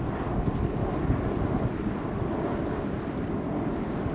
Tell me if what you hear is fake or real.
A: real